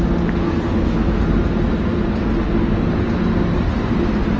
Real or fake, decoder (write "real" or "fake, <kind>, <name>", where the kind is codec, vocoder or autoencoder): real